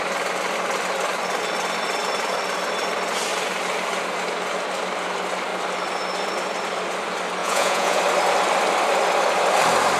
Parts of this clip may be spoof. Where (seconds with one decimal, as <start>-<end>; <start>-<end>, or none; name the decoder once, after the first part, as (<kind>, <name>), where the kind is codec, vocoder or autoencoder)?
7.4-8.0 (vocoder, Vocos)